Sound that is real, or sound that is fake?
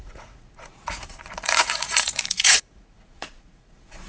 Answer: fake